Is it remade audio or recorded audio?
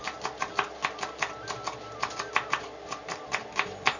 recorded